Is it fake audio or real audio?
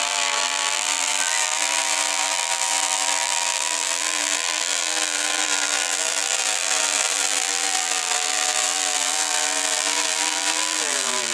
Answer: fake